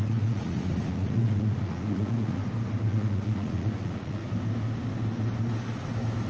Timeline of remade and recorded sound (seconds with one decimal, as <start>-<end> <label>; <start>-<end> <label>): 0.0-2.4 remade; 2.4-2.9 recorded; 2.9-4.2 remade; 4.2-6.3 recorded